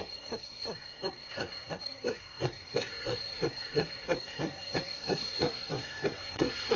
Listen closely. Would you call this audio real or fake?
fake